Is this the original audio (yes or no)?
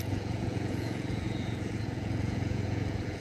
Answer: no